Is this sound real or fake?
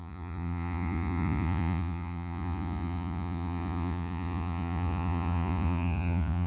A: fake